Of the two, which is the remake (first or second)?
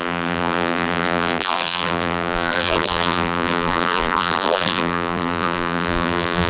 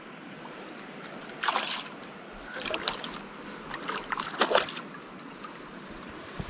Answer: first